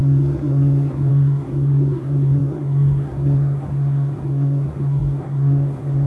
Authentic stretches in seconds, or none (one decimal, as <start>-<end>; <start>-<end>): none